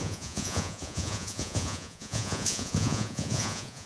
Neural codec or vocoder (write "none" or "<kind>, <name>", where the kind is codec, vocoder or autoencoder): vocoder, Vocos